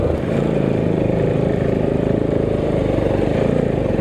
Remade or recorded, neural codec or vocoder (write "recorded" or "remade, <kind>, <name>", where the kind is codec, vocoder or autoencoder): remade, vocoder, BigVGAN v2